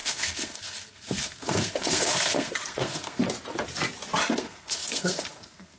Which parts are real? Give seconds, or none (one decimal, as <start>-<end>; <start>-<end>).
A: 3.2-4.3